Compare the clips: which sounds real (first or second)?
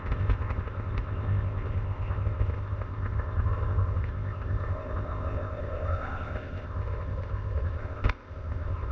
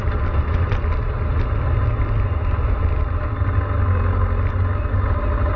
second